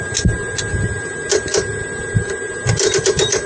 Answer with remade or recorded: recorded